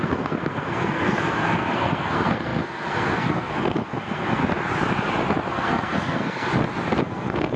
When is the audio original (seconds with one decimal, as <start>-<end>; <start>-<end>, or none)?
4.4-5.5; 6.5-7.0